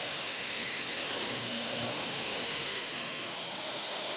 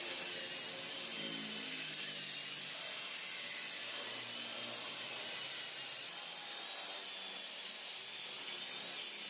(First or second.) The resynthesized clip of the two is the first